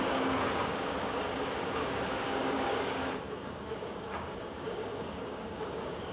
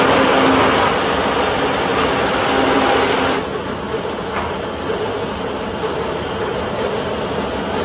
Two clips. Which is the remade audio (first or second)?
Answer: first